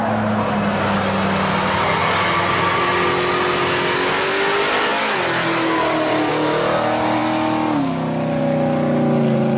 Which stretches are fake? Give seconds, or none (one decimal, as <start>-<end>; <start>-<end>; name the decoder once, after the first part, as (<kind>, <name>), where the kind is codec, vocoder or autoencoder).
none